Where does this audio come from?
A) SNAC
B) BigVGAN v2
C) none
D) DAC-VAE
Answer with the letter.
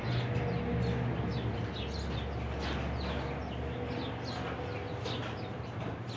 C